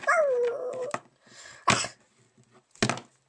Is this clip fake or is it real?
real